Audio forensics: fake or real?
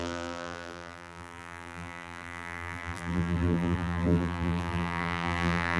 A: fake